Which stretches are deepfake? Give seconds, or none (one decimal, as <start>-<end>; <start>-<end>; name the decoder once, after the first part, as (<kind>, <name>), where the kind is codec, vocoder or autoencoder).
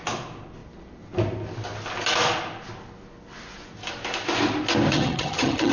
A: 4.9-5.7 (vocoder, HiFi-GAN)